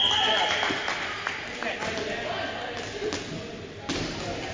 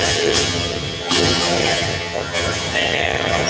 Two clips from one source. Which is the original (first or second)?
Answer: first